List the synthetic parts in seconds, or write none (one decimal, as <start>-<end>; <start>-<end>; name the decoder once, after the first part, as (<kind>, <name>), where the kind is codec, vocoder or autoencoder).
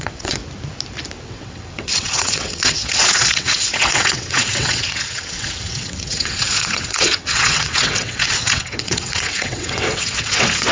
0.0-0.4 (vocoder, WaveNeXt); 1.2-10.7